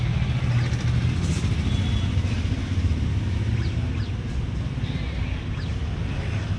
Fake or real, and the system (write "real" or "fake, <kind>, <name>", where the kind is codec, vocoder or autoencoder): real